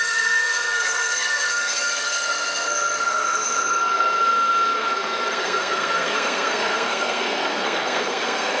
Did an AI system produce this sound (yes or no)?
yes